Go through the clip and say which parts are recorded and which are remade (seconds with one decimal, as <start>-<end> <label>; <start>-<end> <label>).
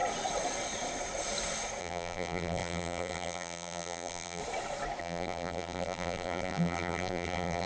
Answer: 0.0-1.8 recorded; 1.8-4.4 remade; 4.4-5.0 recorded; 5.0-7.7 remade